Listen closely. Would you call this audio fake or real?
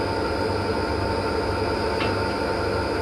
real